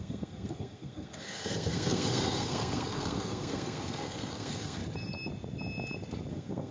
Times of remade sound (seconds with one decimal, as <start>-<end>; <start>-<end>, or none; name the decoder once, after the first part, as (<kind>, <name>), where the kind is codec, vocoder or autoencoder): 0.0-4.8 (codec, SNAC); 6.3-6.7